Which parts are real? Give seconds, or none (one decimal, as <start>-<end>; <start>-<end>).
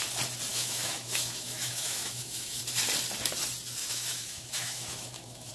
0.0-0.5; 2.6-3.8